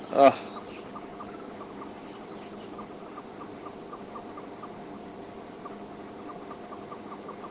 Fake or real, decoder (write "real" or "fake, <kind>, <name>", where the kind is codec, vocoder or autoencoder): real